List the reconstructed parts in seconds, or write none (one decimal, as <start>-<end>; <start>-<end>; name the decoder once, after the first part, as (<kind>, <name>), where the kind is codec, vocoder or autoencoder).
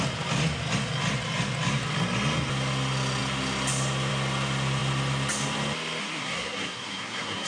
6.0-7.5 (codec, SNAC)